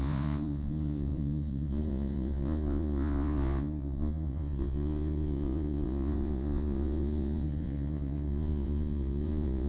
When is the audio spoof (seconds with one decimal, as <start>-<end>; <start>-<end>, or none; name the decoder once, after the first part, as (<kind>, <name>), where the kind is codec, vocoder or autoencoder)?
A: 0.0-9.7 (vocoder, Vocos)